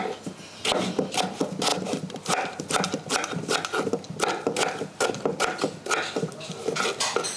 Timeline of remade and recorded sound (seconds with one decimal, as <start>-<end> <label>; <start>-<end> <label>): 0.0-7.4 recorded